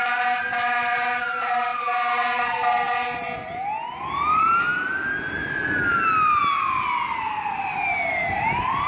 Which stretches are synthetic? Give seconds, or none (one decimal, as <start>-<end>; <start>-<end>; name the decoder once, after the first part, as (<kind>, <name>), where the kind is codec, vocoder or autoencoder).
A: none